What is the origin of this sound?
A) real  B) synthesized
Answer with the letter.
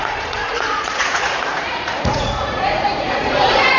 B